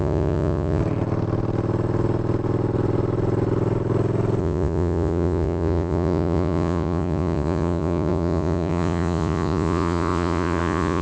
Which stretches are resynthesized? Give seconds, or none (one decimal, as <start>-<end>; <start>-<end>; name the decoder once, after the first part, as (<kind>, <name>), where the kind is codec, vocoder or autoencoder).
0.0-0.8 (vocoder, Vocos); 4.4-11.0